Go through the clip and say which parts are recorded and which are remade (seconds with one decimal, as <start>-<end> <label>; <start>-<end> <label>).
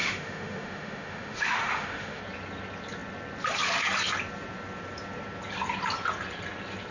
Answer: 0.0-2.2 remade; 2.2-6.9 recorded